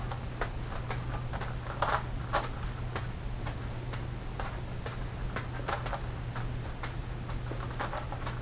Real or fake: real